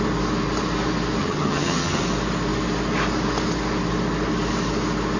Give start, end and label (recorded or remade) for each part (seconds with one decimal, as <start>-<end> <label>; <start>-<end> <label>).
0.0-1.2 recorded; 1.2-2.0 remade; 2.0-5.2 recorded